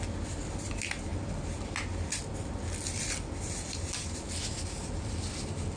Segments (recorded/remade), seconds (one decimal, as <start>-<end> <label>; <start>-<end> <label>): 0.0-5.8 recorded